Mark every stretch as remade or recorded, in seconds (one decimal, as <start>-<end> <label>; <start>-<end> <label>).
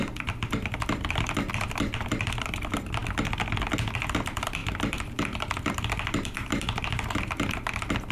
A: 0.0-8.1 recorded